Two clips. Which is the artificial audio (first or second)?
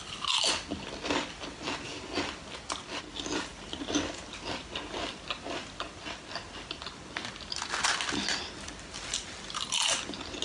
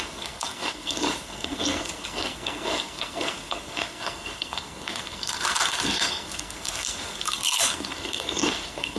second